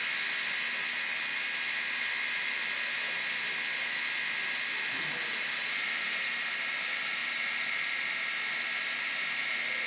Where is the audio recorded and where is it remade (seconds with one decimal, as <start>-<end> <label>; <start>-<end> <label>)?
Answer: 0.0-9.9 recorded